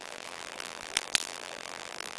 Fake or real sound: fake